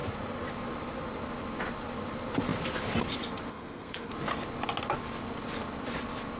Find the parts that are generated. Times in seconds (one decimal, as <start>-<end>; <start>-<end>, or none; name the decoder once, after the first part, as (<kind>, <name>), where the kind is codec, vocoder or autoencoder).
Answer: 3.5-4.1 (codec, SNAC)